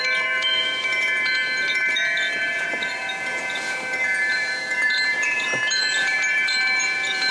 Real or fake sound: fake